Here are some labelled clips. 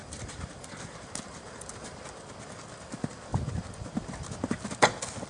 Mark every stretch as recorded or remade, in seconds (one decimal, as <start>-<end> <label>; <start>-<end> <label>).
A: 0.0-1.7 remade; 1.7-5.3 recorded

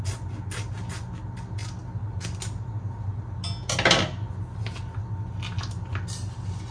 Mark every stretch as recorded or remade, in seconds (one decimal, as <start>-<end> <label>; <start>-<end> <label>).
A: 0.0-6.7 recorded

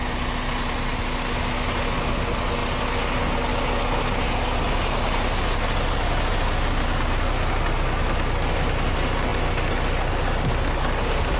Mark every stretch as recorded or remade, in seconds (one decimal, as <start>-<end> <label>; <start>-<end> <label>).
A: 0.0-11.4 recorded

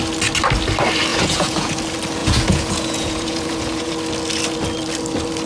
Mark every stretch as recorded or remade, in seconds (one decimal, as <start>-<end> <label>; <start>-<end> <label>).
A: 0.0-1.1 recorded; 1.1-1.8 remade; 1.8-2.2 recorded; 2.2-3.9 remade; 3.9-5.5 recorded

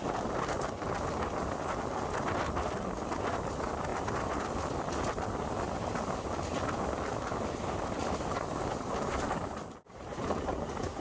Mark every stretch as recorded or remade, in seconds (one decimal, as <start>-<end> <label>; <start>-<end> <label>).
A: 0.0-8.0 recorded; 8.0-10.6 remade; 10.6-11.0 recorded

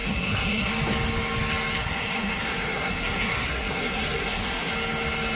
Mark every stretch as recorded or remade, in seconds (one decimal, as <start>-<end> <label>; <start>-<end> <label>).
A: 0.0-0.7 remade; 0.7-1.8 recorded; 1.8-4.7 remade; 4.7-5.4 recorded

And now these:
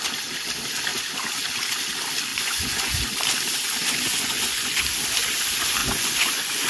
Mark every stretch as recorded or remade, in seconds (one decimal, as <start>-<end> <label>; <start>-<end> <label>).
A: 0.0-2.3 recorded; 2.3-3.0 remade; 3.0-3.8 recorded; 3.8-4.8 remade; 4.8-5.8 recorded; 5.8-6.7 remade

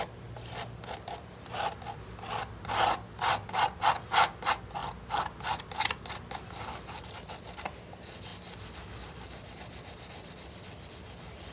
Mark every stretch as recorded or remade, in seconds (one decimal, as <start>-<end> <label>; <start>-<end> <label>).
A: 0.0-11.5 recorded